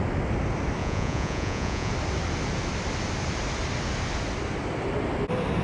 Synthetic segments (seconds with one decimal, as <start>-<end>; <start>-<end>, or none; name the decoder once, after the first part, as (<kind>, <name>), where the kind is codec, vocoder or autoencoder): 0.8-1.9 (vocoder, Vocos)